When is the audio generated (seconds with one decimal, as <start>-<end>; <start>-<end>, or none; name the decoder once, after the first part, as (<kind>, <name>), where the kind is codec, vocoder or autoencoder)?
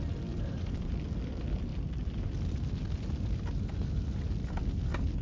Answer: none